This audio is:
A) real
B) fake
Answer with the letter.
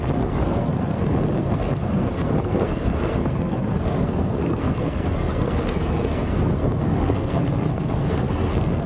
B